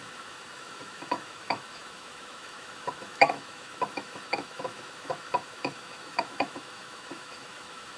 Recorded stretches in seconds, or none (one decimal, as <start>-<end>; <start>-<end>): none